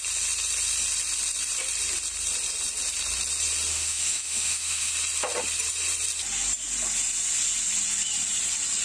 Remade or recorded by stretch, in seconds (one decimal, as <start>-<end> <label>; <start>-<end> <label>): 0.0-3.7 recorded; 3.7-4.9 remade; 4.9-8.8 recorded